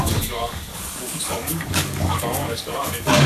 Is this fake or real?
fake